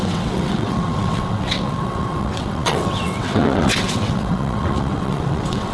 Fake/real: fake